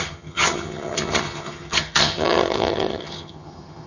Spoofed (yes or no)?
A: yes